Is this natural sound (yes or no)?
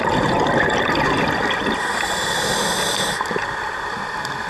yes